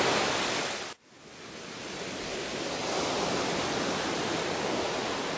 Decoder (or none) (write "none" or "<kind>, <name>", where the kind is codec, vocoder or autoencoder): none